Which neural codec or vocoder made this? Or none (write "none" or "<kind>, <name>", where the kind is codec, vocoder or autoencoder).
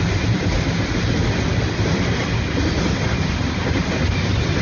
vocoder, BigVGAN v2